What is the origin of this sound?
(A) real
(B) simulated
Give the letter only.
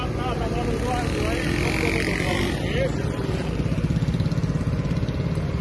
A